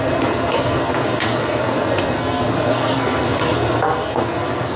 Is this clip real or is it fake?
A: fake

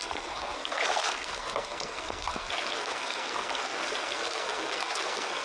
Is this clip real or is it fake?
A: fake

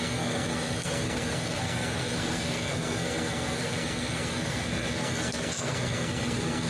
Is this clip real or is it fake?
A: fake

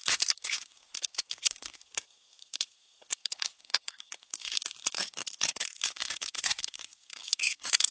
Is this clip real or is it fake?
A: fake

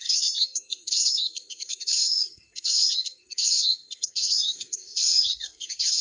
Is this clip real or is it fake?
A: fake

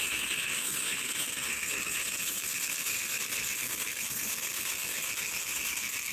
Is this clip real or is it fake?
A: fake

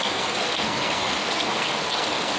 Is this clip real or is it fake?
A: fake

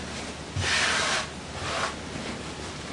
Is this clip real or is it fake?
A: real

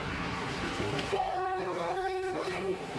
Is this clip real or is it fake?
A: fake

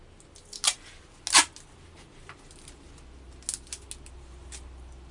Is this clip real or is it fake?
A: real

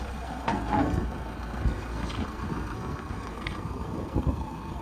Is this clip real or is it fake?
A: fake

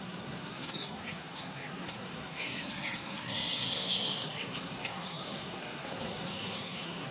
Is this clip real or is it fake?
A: fake